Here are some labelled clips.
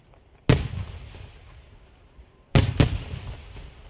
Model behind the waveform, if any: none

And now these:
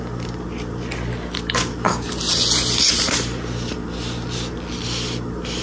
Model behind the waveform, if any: none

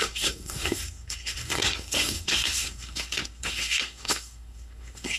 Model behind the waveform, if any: codec, SNAC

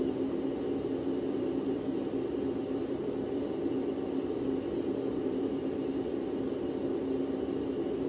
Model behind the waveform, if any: none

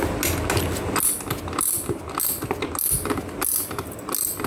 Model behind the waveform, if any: none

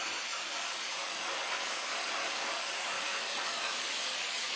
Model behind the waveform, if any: codec, DAC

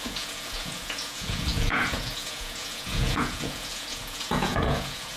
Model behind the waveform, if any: vocoder, Vocos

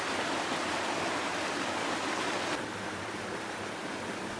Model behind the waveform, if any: none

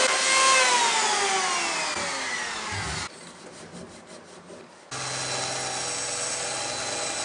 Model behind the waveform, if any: none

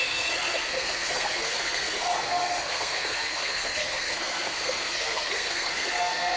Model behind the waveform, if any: codec, SNAC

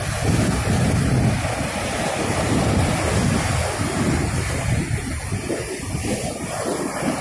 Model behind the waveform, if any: none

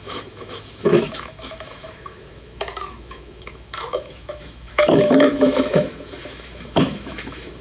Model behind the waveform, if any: autoencoder, DAC-VAE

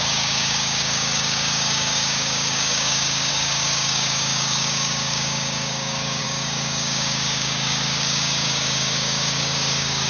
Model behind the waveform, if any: codec, DAC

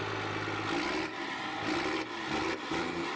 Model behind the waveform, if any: none